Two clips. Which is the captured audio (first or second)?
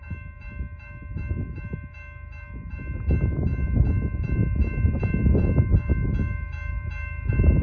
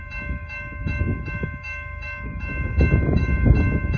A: first